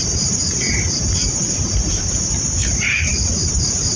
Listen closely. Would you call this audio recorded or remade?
remade